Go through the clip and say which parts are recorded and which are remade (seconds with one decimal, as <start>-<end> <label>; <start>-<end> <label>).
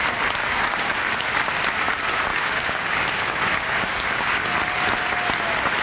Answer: 0.0-0.4 recorded; 0.4-1.1 remade; 1.1-2.3 recorded; 2.3-4.6 remade; 4.6-5.8 recorded